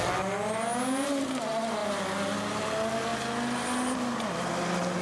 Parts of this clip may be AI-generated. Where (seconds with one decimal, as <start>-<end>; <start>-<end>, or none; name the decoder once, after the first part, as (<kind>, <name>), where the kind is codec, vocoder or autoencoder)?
none